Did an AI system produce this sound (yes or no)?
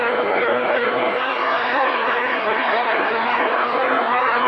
yes